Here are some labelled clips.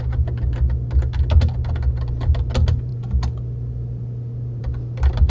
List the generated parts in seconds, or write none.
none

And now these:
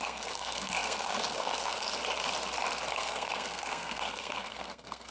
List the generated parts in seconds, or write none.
0.0-2.0 (codec, SNAC); 2.9-5.1

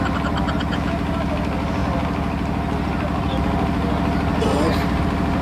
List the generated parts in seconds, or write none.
none